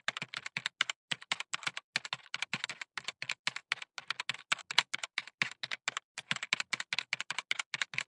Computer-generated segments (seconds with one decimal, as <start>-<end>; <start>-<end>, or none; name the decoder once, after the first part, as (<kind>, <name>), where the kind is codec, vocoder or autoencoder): none